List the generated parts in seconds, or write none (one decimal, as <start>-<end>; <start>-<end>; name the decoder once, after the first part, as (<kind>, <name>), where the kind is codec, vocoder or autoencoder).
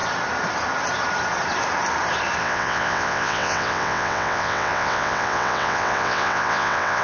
2.4-7.0 (vocoder, WaveNeXt)